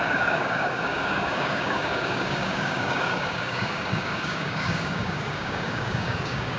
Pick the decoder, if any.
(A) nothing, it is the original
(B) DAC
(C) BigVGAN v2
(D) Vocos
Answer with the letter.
B